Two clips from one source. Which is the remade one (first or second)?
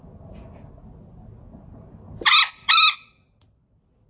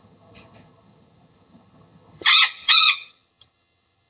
second